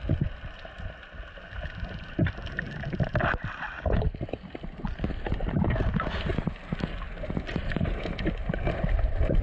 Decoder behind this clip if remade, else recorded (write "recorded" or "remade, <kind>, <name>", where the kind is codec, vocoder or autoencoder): recorded